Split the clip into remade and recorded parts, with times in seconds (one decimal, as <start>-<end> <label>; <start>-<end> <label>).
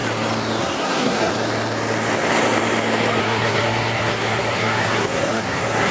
0.0-0.6 recorded; 0.6-1.3 remade; 1.3-3.2 recorded; 3.2-5.9 remade